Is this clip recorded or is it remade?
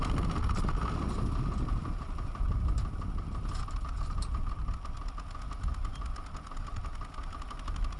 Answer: recorded